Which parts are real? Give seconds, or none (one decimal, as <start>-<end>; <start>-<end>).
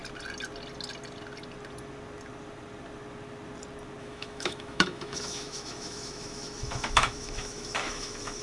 0.0-4.0